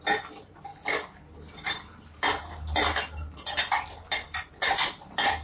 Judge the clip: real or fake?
real